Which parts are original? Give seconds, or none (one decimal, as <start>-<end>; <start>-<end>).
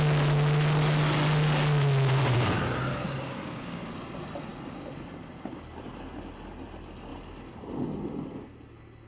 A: 0.0-2.9; 3.8-9.1